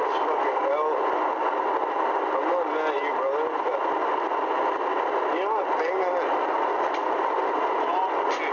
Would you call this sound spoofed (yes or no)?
no